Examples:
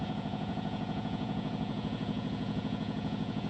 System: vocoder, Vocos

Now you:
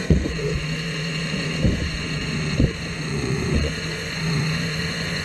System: vocoder, Vocos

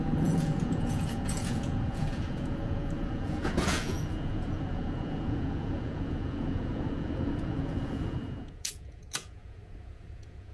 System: vocoder, Vocos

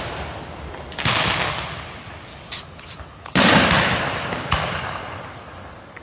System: none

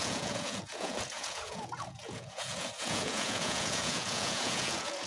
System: vocoder, Vocos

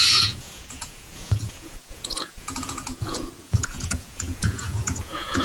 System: vocoder, Vocos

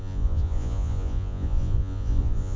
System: vocoder, Vocos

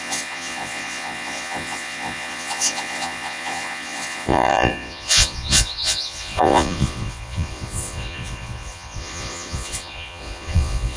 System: vocoder, Vocos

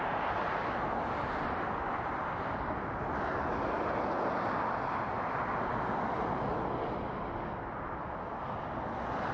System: none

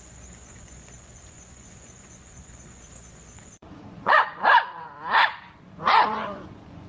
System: vocoder, Vocos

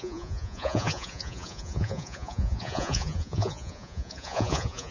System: vocoder, Vocos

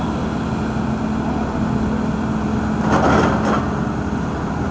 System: none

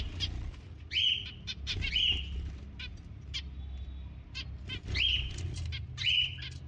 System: none